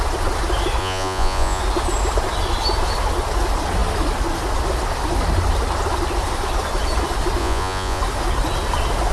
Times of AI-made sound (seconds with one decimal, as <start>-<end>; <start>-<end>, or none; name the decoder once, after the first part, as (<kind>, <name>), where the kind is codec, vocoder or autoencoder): 0.8-1.6 (vocoder, Vocos); 7.4-8.0

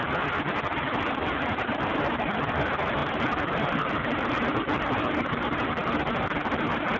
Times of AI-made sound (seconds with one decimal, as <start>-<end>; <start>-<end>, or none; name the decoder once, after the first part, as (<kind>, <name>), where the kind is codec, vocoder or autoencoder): none

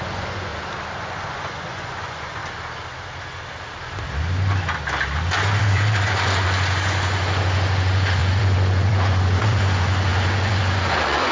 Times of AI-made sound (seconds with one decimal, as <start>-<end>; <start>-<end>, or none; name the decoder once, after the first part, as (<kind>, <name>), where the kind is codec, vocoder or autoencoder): 0.0-0.5 (vocoder, Vocos); 1.0-2.4; 5.6-11.3

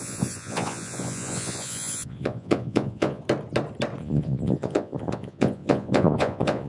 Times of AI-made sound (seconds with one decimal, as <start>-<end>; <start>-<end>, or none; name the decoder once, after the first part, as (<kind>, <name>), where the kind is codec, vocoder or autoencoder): 0.0-3.2 (vocoder, Vocos); 4.0-6.7

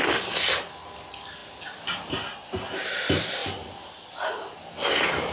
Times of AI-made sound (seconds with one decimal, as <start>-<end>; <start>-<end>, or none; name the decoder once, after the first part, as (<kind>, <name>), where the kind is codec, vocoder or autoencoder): none

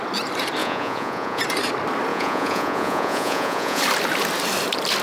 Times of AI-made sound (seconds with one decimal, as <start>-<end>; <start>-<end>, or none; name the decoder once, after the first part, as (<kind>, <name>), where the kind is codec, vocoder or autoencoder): 0.6-1.4 (vocoder, Vocos); 2.1-3.8

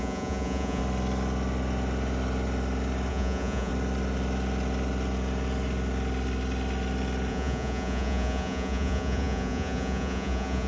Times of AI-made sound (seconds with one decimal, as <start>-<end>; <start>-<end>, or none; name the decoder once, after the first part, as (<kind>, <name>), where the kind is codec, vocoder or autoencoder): 0.0-0.8 (vocoder, Vocos); 3.1-3.7; 7.3-10.7

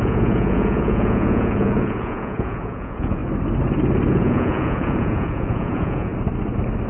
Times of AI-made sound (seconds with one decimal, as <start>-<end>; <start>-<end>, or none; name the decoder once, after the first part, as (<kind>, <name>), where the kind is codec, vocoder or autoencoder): 0.0-3.2 (vocoder, Vocos); 4.1-6.1